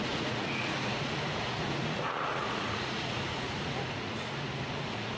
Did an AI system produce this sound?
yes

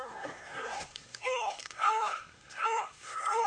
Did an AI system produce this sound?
yes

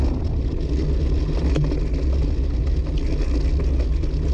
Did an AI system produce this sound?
no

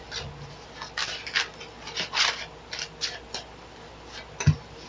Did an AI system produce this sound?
no